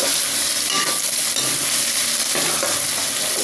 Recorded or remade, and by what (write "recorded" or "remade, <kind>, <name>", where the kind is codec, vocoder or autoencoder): recorded